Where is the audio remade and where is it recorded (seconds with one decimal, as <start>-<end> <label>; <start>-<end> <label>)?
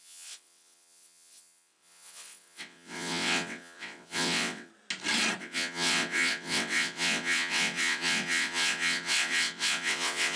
0.0-4.7 remade; 4.7-5.4 recorded; 5.4-10.4 remade